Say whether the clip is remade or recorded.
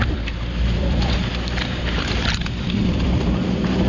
remade